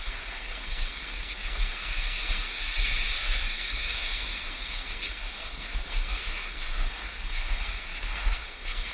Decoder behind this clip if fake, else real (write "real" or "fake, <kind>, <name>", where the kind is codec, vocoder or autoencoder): fake, codec, SNAC